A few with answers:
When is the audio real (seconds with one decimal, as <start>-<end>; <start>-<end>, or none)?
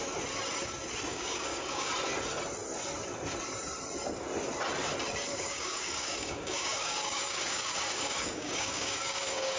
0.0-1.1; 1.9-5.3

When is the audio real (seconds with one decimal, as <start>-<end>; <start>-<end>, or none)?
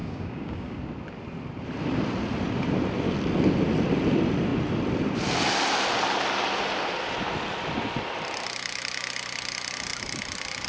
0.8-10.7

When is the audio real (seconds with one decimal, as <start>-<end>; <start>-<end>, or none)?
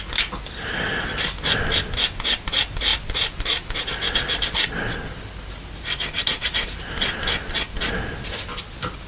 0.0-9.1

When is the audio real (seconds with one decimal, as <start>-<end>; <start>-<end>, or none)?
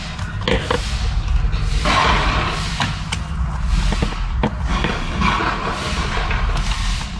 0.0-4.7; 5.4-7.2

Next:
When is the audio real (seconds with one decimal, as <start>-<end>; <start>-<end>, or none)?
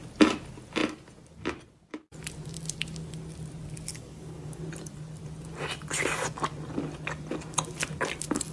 0.0-3.9; 4.6-8.5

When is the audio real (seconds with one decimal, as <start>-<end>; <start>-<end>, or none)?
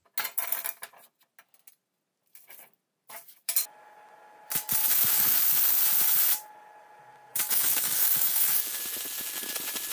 0.0-4.8; 5.4-7.3; 8.8-9.9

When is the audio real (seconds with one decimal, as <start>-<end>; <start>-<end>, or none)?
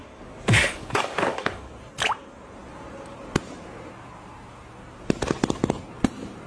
1.7-6.5